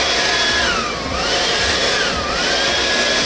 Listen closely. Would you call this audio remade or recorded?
recorded